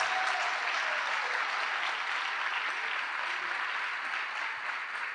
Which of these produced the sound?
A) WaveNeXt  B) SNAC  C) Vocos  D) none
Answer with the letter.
D